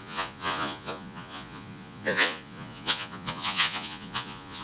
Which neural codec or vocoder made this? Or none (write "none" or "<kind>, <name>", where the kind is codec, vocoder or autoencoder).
vocoder, Vocos